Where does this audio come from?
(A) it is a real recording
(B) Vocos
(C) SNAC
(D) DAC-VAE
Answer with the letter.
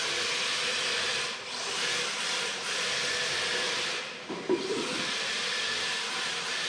A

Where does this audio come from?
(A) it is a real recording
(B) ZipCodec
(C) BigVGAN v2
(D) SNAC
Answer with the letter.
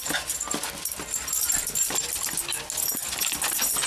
A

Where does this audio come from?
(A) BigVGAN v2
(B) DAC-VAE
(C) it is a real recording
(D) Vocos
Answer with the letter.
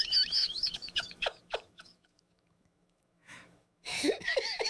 B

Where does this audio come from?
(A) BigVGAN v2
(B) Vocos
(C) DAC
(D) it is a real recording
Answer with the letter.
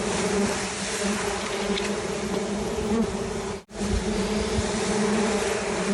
D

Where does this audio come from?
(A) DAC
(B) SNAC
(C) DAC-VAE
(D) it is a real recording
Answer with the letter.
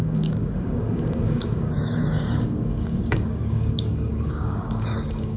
A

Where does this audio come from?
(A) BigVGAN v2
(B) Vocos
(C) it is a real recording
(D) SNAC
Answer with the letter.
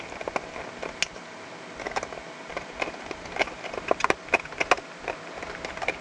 C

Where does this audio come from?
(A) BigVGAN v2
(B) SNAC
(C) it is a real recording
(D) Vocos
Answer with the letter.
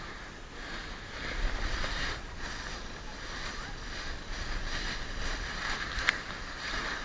C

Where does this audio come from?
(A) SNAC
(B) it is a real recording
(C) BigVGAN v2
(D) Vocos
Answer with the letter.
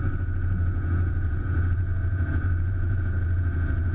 D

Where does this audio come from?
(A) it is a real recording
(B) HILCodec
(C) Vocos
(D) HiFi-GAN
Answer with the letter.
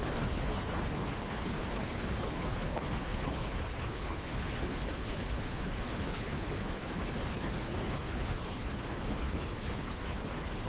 B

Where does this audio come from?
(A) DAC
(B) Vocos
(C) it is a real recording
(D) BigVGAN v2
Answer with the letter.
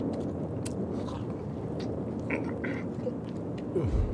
C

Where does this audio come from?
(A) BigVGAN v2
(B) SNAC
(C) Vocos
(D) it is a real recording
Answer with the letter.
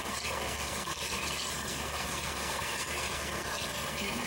B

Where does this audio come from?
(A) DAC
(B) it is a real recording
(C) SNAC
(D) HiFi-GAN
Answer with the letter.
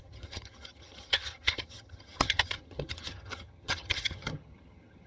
D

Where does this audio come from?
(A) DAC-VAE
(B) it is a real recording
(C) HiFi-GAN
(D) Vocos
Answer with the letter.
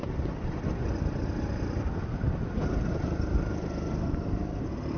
B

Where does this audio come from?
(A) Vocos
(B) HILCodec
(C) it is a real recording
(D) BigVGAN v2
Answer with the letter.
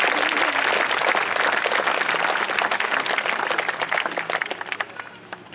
C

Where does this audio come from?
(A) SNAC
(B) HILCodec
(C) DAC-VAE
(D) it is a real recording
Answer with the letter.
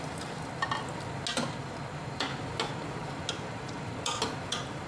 D